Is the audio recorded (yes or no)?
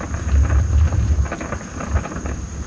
yes